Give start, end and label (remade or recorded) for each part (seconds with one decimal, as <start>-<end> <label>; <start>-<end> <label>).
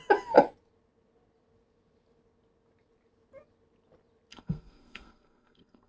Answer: 0.0-4.3 recorded; 4.3-5.9 remade